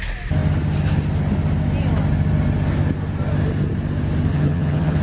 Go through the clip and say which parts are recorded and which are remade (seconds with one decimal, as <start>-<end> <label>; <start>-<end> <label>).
0.0-4.3 recorded; 4.3-5.0 remade